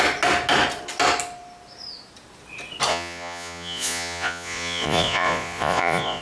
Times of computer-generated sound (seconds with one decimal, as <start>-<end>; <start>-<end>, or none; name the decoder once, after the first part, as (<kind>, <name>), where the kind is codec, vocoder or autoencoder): 2.9-6.2 (vocoder, Vocos)

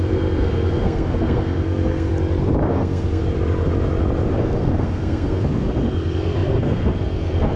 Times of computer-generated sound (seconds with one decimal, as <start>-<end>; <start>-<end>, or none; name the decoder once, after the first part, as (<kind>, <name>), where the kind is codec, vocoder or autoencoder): 0.0-2.1 (codec, SNAC); 2.7-3.2; 4.4-7.6